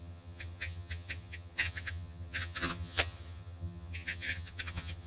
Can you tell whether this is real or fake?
fake